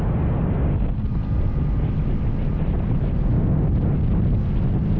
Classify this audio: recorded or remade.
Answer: recorded